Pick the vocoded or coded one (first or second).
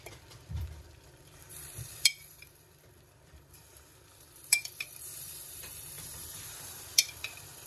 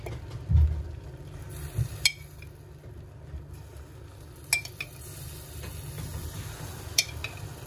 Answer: first